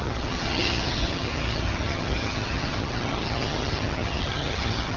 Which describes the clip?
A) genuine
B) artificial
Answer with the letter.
B